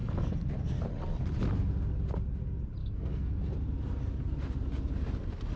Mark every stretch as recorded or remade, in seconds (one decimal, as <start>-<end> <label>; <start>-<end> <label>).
0.0-2.8 recorded; 2.8-3.3 remade; 3.3-5.6 recorded